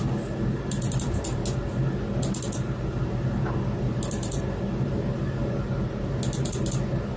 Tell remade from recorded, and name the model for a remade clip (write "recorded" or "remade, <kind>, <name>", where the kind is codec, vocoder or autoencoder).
recorded